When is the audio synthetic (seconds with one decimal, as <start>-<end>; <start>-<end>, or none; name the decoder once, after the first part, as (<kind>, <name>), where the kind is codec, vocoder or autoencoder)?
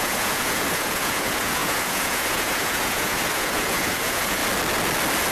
0.0-4.4 (vocoder, Vocos)